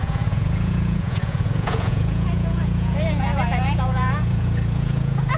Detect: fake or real fake